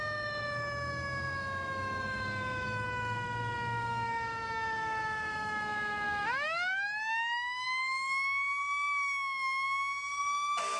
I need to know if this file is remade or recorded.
remade